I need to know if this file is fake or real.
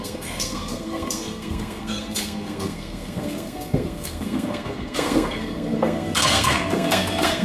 fake